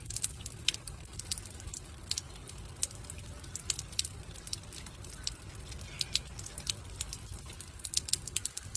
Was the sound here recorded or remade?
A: recorded